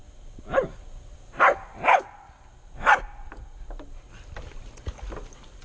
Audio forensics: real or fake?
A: real